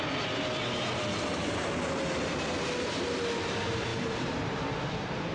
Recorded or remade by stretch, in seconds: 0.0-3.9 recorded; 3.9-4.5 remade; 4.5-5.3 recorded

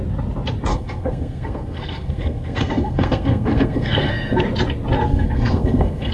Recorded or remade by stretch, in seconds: 0.0-0.7 recorded; 0.7-4.4 remade; 4.4-5.1 recorded; 5.1-6.1 remade

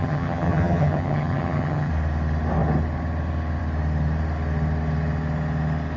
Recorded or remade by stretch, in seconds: 0.0-1.9 remade; 1.9-6.0 recorded

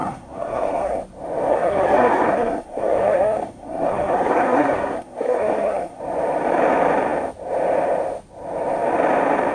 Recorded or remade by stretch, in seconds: 0.0-1.0 remade; 1.0-1.5 recorded; 1.5-6.0 remade; 6.0-9.5 recorded

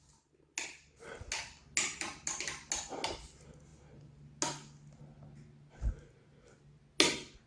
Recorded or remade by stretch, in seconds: 0.0-7.5 recorded